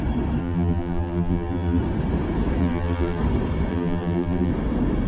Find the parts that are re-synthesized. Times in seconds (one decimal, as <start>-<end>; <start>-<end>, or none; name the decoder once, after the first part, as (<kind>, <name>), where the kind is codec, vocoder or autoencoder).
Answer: 0.4-1.8 (vocoder, BigVGAN v2); 2.6-3.2; 3.7-4.5